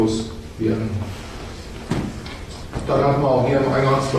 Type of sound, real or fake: real